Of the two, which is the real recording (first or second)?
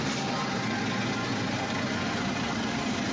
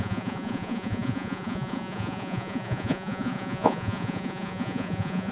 first